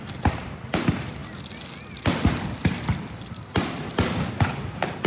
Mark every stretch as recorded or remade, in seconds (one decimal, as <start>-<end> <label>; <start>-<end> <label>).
0.0-5.1 recorded